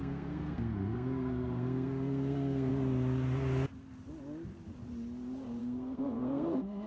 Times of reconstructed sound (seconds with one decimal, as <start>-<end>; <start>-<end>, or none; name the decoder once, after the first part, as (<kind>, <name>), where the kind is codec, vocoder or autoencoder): 0.0-2.7 (codec, SNAC); 5.6-6.9